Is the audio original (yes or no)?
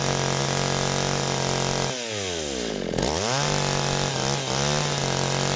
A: yes